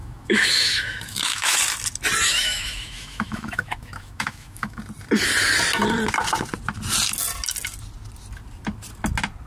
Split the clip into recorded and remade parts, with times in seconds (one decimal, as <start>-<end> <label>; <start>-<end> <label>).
0.0-1.6 remade; 1.6-2.3 recorded; 2.3-4.8 remade; 4.8-9.5 recorded